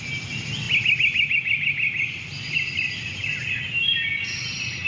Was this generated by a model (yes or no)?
no